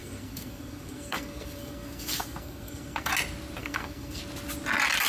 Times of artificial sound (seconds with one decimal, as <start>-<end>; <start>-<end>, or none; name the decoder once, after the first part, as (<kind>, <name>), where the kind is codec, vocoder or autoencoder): 0.0-3.1 (codec, SNAC); 3.6-4.2